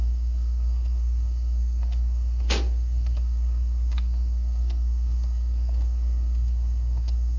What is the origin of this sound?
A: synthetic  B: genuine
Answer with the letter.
A